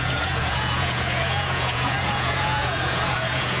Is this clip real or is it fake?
fake